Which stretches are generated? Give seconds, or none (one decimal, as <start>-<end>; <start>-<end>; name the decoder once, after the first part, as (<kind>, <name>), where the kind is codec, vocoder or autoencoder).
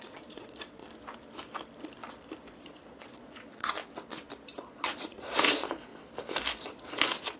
0.0-0.8 (vocoder, Vocos); 2.5-3.8; 4.6-5.9; 6.6-7.4